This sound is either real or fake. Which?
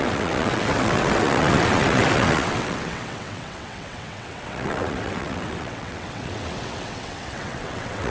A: fake